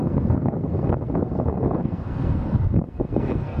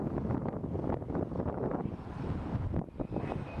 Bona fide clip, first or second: second